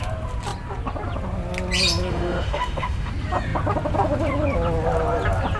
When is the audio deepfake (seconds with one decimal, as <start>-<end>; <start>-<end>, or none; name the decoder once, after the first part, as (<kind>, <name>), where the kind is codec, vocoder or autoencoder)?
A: 2.1-3.1 (autoencoder, DAC-VAE)